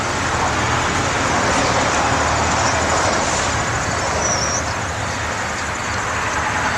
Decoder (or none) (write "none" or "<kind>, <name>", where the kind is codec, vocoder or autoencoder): none